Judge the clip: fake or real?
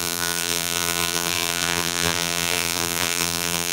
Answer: fake